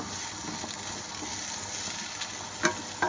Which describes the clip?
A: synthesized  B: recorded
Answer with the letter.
B